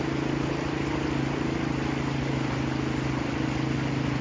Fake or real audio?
real